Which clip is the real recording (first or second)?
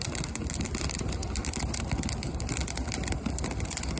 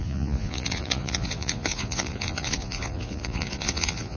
first